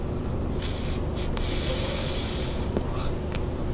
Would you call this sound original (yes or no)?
yes